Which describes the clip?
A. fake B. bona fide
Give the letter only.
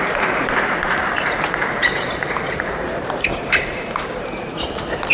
A